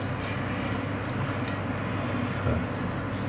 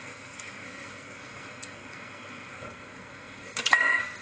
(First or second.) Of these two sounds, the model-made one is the second